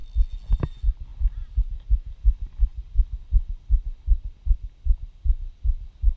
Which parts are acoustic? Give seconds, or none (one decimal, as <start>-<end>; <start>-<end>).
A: 0.0-6.2